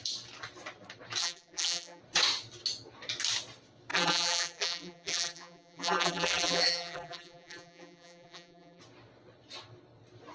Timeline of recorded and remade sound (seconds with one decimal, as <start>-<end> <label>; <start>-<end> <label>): 0.0-1.2 recorded; 1.2-2.0 remade; 2.0-3.9 recorded; 3.9-8.8 remade; 8.8-10.3 recorded